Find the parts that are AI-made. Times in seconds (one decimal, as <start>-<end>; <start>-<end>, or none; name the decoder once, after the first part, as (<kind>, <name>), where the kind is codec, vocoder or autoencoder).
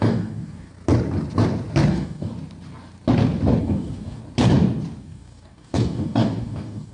0.0-0.7 (codec, DAC); 1.9-2.3; 3.6-4.2; 5.0-6.9